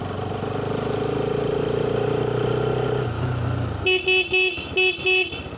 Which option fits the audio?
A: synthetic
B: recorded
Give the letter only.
B